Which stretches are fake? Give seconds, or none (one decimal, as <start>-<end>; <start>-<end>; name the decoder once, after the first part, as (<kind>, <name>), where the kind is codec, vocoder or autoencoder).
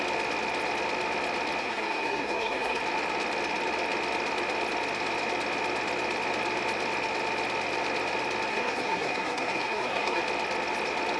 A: 1.6-2.8 (codec, SNAC); 8.5-10.2